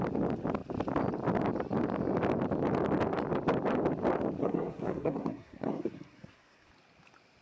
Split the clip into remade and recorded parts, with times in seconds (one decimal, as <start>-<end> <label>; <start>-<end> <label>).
0.0-4.4 recorded; 4.4-6.7 remade; 6.7-7.4 recorded